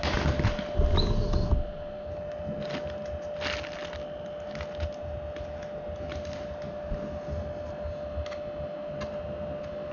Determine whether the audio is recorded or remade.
recorded